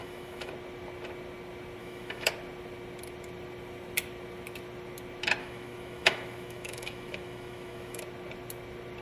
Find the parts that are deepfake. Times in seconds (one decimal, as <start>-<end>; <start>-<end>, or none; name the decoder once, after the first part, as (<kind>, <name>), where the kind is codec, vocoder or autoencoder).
0.0-0.5 (autoencoder, DAC-VAE); 1.8-2.3; 5.4-8.0